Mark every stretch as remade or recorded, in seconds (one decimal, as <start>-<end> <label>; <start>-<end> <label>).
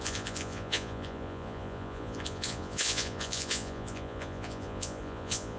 0.0-5.6 remade